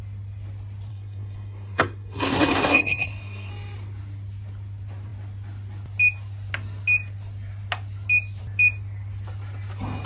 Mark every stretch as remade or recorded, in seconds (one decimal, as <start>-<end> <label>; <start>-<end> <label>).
0.0-0.9 recorded; 0.9-3.5 remade; 3.5-10.1 recorded